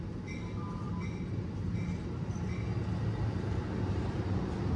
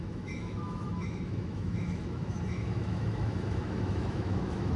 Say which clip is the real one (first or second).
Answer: first